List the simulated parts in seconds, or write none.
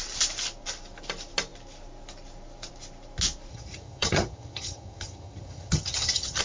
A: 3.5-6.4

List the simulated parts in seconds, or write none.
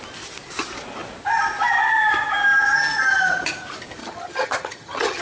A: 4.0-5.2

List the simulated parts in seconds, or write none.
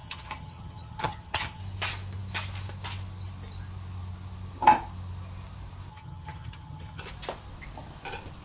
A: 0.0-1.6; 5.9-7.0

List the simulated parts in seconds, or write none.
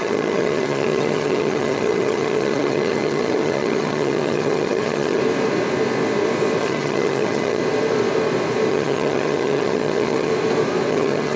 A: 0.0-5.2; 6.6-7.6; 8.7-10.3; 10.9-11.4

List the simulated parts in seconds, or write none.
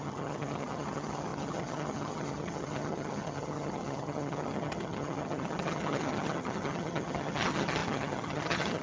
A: 0.0-8.8